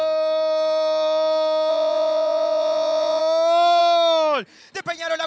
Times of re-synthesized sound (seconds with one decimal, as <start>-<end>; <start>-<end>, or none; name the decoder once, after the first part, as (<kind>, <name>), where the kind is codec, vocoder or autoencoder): 1.7-3.2 (vocoder, Vocos)